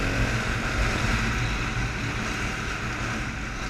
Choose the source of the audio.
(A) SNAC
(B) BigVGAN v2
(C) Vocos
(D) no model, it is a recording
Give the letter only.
D